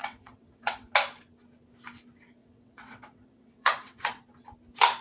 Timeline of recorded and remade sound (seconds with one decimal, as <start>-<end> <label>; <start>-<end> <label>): 0.0-0.9 remade; 0.9-2.4 recorded; 2.4-4.2 remade; 4.2-5.0 recorded